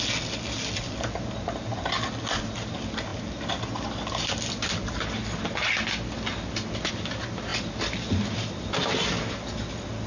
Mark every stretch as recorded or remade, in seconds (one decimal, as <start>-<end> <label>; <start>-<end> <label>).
0.0-10.1 recorded